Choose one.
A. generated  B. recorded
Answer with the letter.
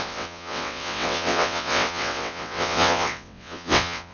A